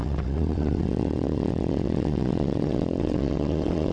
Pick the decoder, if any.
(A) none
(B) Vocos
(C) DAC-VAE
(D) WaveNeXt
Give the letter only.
D